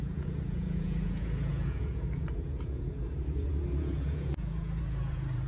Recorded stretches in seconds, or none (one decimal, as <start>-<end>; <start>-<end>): none